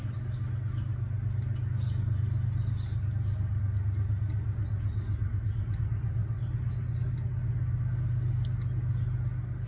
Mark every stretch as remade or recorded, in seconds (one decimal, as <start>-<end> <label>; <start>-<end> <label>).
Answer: 0.0-9.7 recorded